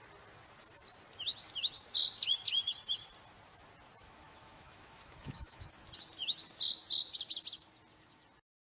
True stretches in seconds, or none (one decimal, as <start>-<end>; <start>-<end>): 0.0-4.0; 5.7-8.6